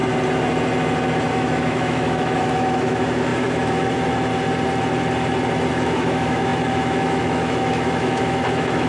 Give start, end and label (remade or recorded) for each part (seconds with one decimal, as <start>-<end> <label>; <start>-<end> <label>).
0.0-1.3 recorded; 1.3-4.3 remade; 4.3-5.7 recorded; 5.7-8.9 remade